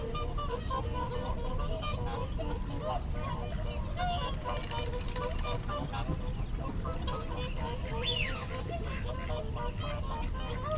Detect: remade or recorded recorded